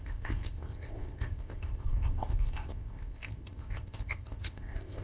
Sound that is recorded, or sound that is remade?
remade